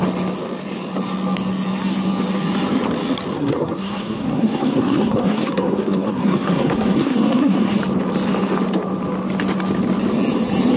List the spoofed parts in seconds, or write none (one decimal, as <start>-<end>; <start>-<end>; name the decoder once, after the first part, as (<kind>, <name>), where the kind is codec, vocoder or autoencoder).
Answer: 3.3-7.8 (codec, SNAC)